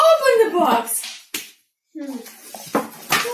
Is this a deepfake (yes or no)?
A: no